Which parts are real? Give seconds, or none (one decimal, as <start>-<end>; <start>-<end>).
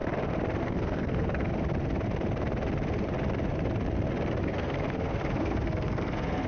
0.0-0.6; 1.5-4.4